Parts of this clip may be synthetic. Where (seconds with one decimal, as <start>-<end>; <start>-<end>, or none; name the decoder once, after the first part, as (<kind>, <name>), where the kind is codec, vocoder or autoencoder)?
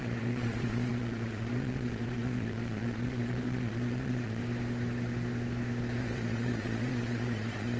0.0-4.4 (vocoder, Vocos); 6.0-7.8